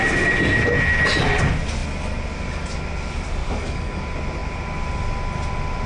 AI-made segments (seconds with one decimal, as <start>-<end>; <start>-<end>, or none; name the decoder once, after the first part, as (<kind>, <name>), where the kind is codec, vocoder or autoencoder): 3.4-4.0 (codec, DAC)